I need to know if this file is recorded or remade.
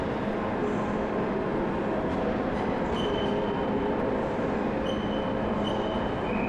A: recorded